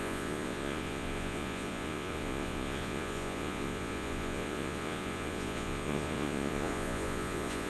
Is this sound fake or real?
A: fake